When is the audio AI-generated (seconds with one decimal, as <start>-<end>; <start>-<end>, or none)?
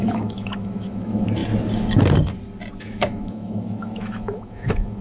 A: 0.0-1.4; 2.8-5.0